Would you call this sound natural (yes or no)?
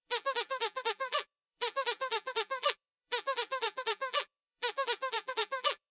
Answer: no